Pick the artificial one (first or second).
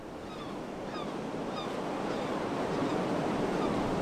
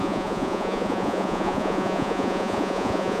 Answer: second